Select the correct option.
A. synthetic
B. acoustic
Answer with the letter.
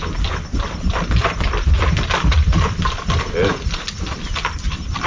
A